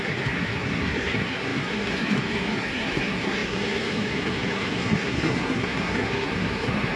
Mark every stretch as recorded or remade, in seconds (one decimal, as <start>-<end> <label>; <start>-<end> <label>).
0.0-7.0 remade

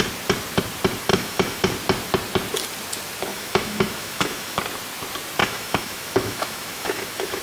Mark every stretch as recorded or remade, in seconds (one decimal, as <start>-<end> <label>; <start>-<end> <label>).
0.0-1.1 recorded; 1.1-1.6 remade; 1.6-3.3 recorded; 3.3-4.6 remade; 4.6-5.4 recorded; 5.4-7.4 remade

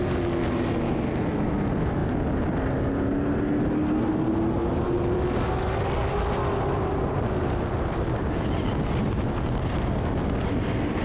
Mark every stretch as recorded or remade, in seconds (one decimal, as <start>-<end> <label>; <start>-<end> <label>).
0.0-11.0 recorded

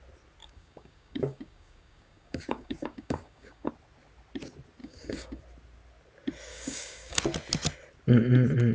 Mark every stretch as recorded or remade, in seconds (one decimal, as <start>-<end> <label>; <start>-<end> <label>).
0.0-0.4 recorded; 0.4-3.7 remade; 3.7-4.8 recorded; 4.8-5.4 remade; 5.4-6.5 recorded; 6.5-7.2 remade; 7.2-8.7 recorded